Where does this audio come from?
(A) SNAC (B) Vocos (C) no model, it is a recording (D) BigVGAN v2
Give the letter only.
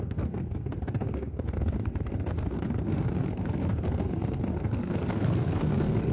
A